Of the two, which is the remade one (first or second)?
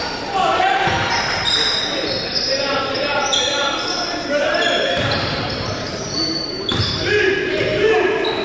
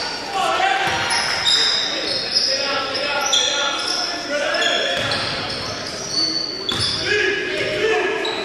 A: first